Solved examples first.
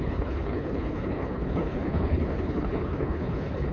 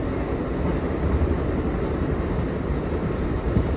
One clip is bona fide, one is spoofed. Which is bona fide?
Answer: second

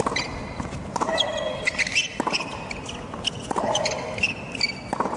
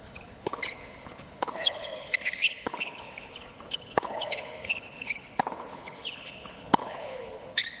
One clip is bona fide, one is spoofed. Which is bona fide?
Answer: first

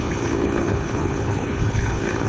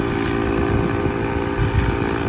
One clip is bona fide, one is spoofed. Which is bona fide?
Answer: second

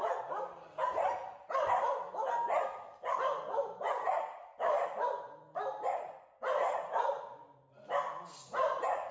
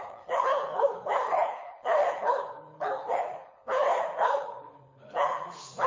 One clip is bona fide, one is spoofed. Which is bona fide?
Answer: first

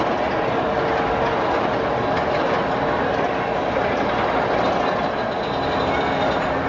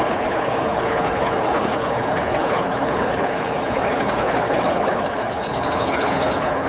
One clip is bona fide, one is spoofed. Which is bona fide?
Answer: first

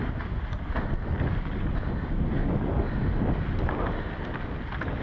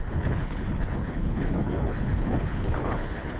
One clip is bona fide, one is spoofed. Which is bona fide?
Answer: first